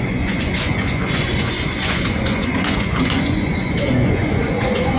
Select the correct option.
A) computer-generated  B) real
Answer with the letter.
A